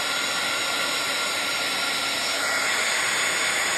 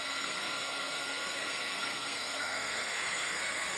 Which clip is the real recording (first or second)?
first